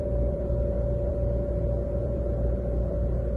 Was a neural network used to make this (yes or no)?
yes